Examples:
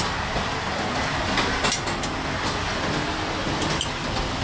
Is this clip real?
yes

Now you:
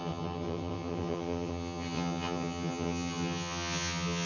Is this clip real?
no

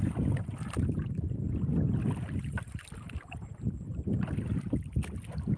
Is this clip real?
yes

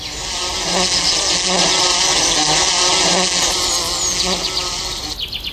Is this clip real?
yes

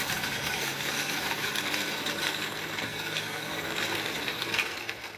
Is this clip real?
no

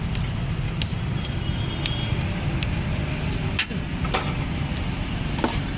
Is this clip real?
yes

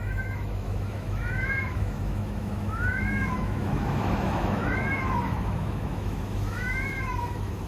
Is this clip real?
no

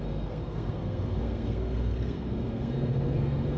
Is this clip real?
no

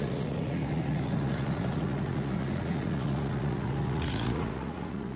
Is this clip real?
no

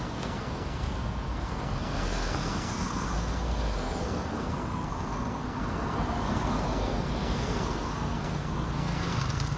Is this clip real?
no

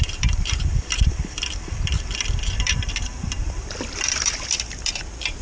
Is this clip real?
no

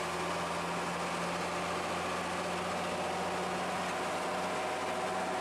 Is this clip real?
yes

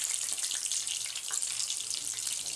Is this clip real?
yes